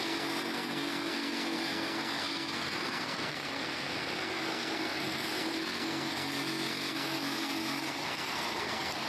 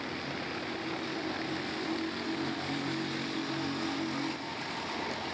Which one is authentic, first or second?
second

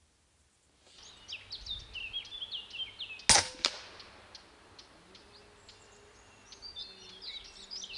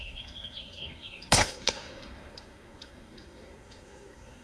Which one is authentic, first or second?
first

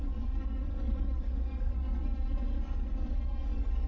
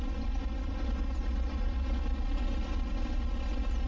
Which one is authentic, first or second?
second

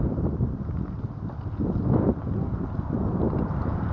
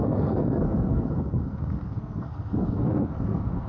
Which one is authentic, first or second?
first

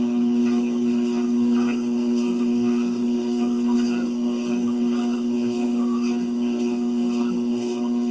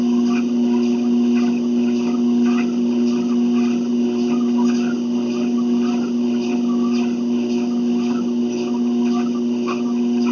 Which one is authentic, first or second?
second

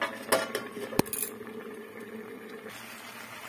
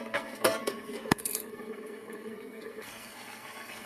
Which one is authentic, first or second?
first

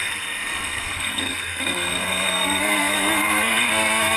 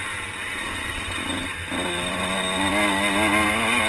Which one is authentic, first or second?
second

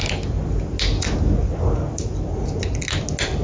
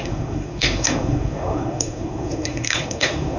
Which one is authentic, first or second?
first